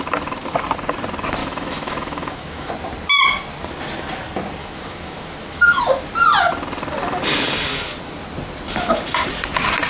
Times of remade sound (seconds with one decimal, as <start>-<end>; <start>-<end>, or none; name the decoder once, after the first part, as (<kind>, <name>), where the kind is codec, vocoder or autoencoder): 1.4-2.7 (autoencoder, DAC-VAE); 4.6-5.8